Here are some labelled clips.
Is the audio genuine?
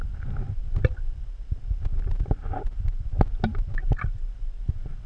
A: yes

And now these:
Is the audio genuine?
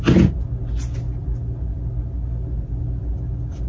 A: yes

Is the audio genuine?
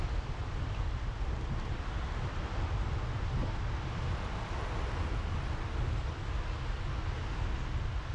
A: yes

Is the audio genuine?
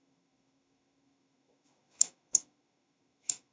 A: no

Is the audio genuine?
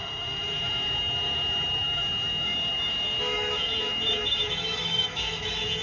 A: no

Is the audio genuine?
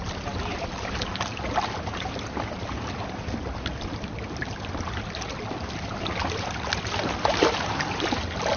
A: yes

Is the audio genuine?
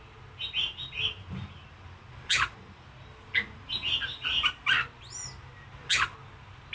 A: yes